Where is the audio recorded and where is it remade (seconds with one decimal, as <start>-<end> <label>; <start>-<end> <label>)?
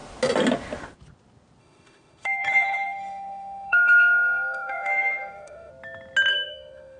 0.0-1.6 recorded; 1.6-5.7 remade; 5.7-6.3 recorded; 6.3-7.0 remade